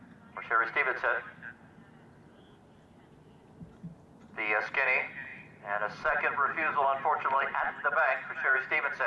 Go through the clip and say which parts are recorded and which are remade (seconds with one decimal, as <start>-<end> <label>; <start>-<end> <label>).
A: 0.0-5.3 recorded; 5.3-9.1 remade